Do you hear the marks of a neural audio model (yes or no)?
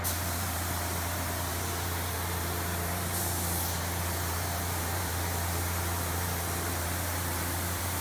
yes